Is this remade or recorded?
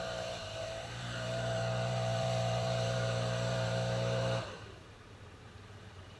remade